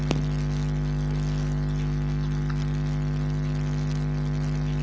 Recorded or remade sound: recorded